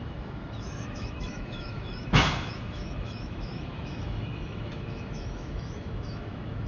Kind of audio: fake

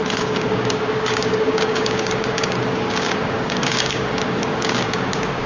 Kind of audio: fake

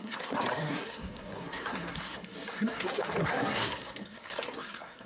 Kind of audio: fake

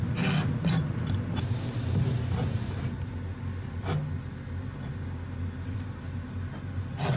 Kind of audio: real